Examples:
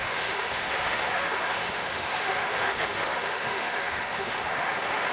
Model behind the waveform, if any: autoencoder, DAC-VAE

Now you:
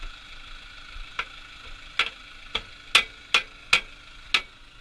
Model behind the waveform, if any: none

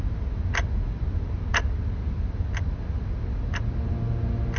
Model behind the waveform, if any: none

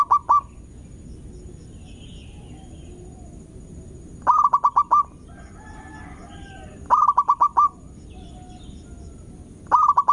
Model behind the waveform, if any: none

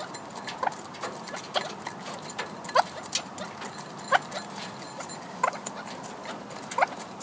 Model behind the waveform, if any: none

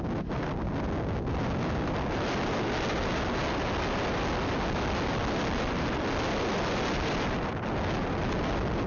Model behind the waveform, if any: none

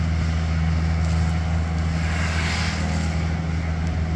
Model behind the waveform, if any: none